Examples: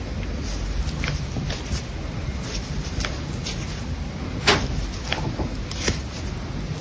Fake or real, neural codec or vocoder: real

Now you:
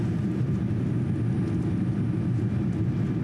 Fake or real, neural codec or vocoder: real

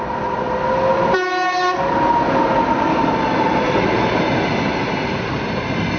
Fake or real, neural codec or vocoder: real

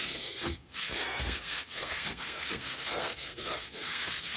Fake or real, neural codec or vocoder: fake, codec, SNAC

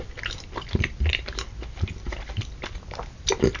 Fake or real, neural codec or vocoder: real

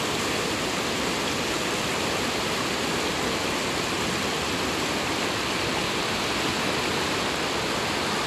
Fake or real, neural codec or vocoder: real